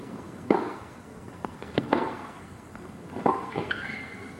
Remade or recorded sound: remade